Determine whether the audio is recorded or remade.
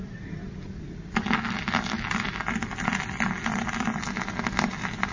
recorded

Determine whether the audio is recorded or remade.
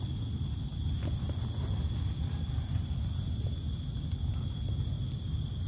recorded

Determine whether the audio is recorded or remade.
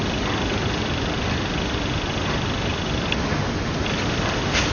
recorded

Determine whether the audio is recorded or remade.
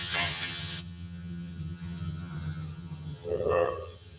remade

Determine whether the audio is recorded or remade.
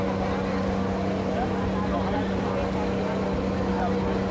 recorded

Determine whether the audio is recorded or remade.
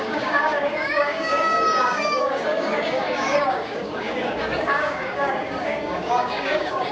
remade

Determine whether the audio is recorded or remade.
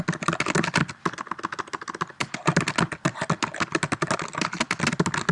recorded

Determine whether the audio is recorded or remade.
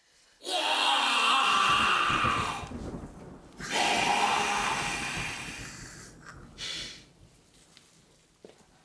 recorded